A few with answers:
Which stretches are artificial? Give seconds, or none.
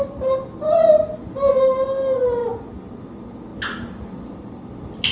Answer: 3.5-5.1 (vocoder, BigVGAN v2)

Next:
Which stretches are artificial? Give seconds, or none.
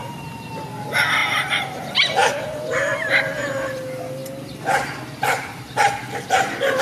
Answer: 1.2-1.8 (vocoder, BigVGAN v2); 2.2-3.5